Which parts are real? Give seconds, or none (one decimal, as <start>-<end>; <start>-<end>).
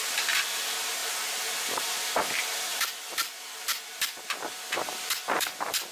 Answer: 0.0-5.9